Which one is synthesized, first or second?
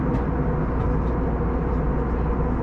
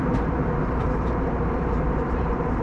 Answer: second